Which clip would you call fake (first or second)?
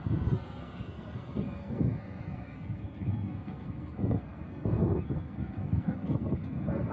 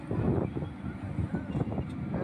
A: first